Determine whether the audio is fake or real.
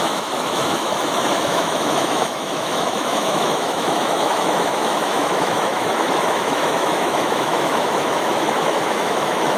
fake